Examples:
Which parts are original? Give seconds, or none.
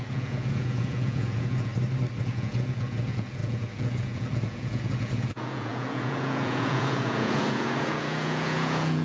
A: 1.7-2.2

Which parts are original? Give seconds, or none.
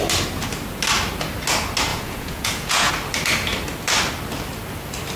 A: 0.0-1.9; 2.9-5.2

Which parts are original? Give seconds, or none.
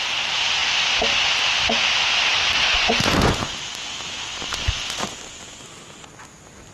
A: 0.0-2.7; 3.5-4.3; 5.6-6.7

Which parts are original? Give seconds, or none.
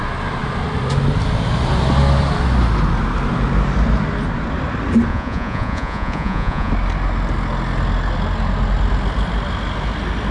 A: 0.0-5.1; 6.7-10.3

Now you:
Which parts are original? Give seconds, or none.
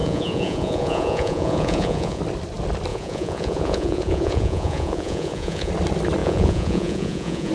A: 2.2-2.9; 5.7-6.2